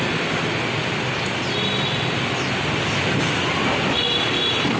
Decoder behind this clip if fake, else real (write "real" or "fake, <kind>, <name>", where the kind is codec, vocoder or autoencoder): real